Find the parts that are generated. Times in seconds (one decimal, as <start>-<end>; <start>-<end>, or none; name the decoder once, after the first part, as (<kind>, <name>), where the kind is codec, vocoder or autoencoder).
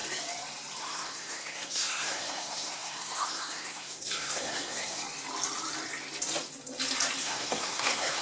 0.8-5.0 (codec, SNAC); 7.2-8.2